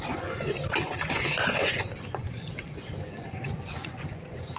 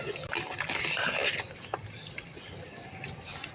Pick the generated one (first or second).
first